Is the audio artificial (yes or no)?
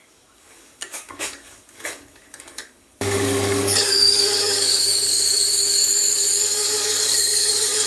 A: yes